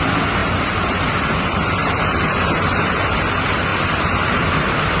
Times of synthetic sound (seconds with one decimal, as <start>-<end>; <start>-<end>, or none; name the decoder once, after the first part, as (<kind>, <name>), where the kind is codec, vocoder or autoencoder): 0.4-1.0 (vocoder, BigVGAN v2); 1.8-2.3; 3.7-4.5